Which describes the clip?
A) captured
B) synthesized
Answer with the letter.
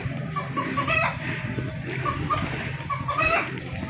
B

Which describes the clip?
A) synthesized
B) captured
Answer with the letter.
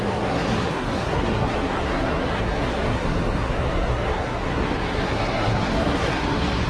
A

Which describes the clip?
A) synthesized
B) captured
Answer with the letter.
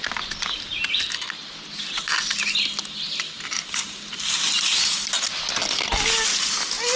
B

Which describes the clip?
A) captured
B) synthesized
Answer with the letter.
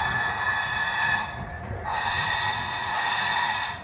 B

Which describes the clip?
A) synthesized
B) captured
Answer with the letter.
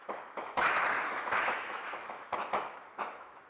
A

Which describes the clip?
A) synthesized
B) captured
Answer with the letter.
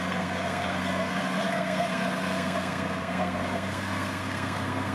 A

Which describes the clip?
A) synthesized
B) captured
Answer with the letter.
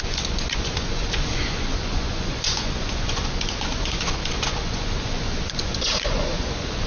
A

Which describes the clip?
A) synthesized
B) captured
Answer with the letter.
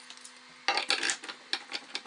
B